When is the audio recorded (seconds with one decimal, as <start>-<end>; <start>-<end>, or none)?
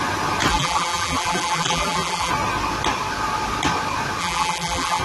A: 0.0-0.5; 2.3-4.2